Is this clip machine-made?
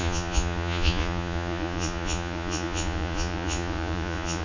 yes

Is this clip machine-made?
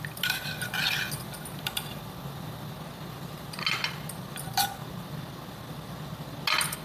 no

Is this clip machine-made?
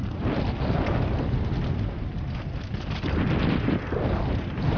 no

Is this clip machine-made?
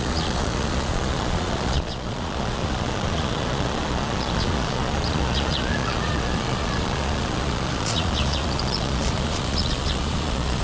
yes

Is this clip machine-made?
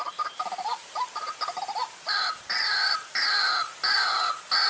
no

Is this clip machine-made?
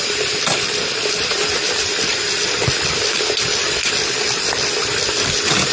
yes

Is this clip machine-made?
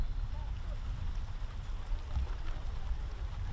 no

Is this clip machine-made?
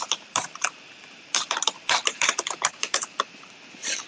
yes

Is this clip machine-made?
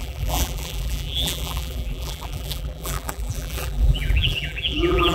yes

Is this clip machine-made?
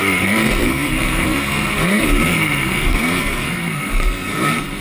yes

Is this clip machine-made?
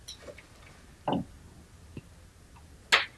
no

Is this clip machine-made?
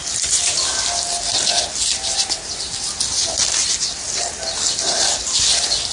no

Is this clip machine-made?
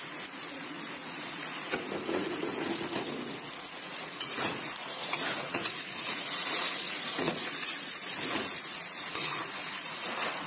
yes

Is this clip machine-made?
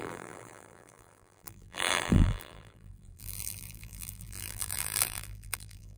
yes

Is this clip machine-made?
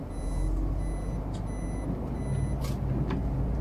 no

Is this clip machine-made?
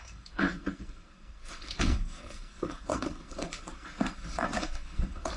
yes